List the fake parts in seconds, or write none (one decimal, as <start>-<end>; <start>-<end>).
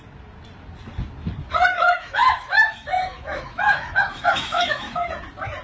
1.7-5.1